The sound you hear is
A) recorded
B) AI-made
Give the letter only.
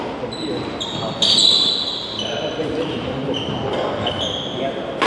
A